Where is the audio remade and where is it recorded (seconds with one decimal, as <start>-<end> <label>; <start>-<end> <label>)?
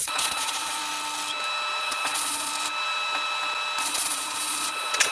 0.0-0.8 remade; 0.8-1.8 recorded; 1.8-2.5 remade; 2.5-3.8 recorded; 3.8-5.1 remade